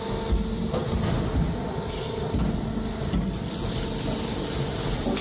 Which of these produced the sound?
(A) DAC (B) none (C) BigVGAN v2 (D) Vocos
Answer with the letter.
B